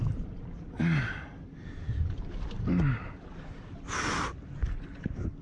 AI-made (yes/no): no